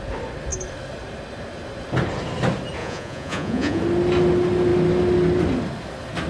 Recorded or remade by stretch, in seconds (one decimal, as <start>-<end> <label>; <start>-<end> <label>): 0.0-2.8 recorded; 2.8-3.8 remade; 3.8-6.3 recorded